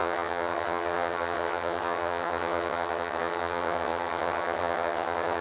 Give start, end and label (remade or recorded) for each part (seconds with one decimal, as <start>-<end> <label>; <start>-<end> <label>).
0.0-5.4 remade